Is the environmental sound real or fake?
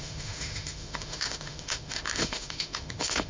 fake